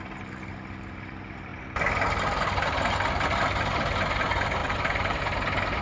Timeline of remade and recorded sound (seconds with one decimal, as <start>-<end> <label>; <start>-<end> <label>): 0.0-4.6 recorded; 4.6-5.2 remade; 5.2-5.8 recorded